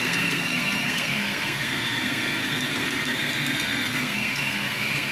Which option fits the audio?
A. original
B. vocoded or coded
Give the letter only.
B